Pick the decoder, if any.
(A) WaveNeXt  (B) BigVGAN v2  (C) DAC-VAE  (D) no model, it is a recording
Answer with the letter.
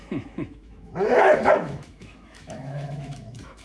C